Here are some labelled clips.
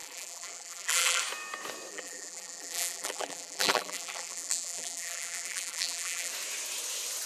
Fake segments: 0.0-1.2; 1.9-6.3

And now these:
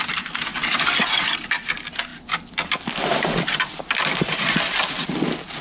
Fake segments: 0.5-1.2